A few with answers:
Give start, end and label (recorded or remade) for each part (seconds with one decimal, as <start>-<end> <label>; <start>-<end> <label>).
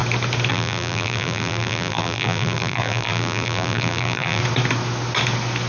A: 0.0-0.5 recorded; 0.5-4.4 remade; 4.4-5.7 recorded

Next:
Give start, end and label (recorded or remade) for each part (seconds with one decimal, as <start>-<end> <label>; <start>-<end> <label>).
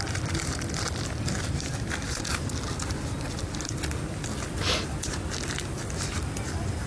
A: 0.0-2.3 remade; 2.3-4.6 recorded; 4.6-6.9 remade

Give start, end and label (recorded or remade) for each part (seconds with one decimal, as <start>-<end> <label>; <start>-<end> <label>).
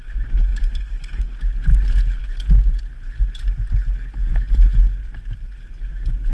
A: 0.0-0.5 recorded; 0.5-1.2 remade; 1.2-5.0 recorded; 5.0-5.7 remade; 5.7-6.3 recorded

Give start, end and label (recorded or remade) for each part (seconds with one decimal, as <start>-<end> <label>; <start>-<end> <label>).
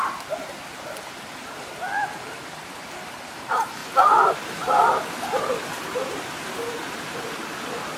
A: 0.0-8.0 recorded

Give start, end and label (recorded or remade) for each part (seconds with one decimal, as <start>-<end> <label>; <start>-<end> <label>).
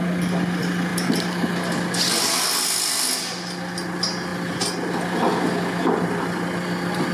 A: 0.0-7.1 recorded